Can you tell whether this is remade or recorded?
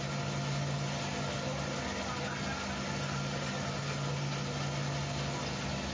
recorded